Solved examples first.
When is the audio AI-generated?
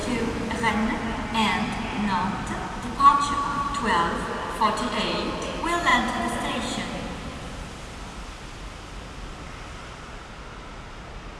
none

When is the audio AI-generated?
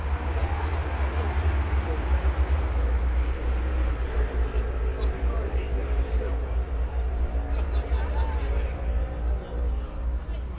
none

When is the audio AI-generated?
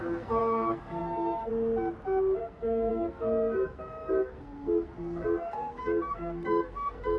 0.0-1.5 (codec, SNAC); 2.4-7.2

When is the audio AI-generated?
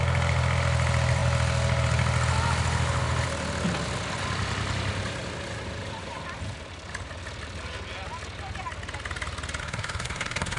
9.6-10.6 (codec, SNAC)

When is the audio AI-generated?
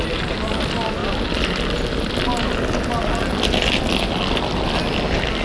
none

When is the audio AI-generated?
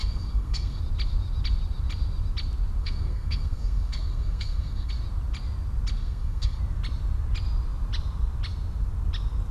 0.0-0.8 (codec, SNAC); 2.8-4.9; 6.0-6.6